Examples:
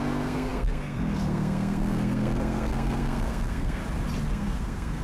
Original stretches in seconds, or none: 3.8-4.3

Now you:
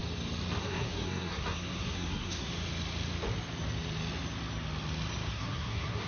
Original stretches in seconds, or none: 0.0-0.6; 2.5-5.3

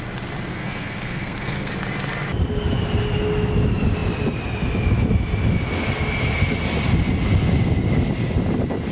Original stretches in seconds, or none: 0.0-0.5; 1.7-8.9

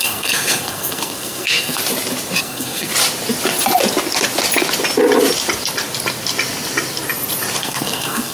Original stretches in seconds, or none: 1.8-2.4; 2.9-7.6

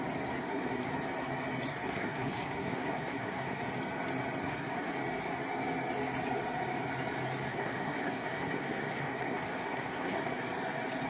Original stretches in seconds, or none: 0.0-0.4; 0.9-1.7; 3.7-4.4; 4.9-7.5; 10.4-11.1